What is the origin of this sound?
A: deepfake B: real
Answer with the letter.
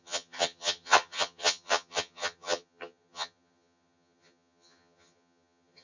A